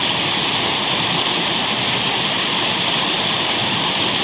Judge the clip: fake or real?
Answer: real